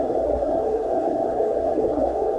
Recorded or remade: remade